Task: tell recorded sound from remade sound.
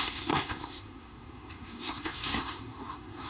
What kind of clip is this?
remade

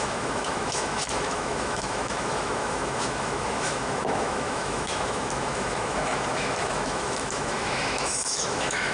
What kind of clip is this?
remade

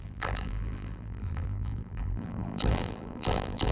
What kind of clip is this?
remade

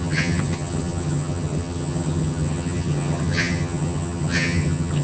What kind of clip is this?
remade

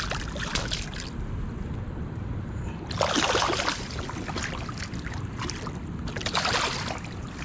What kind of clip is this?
recorded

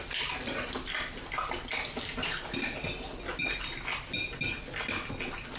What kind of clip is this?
recorded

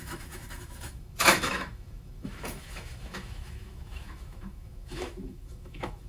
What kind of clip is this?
remade